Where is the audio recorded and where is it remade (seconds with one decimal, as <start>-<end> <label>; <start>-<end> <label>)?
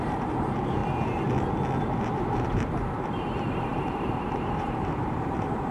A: 0.0-0.8 remade; 0.8-1.8 recorded; 1.8-5.7 remade